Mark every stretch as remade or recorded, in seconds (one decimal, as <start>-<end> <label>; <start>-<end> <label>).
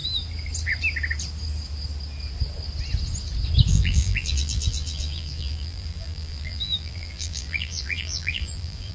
0.0-3.7 recorded; 3.7-8.9 remade